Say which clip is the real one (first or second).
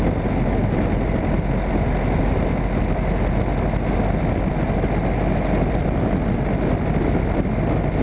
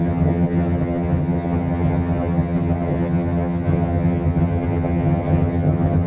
first